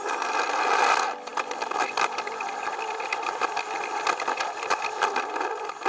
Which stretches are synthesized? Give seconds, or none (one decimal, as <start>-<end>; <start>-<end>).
none